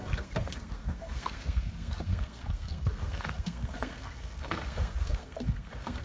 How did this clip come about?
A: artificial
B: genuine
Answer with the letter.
A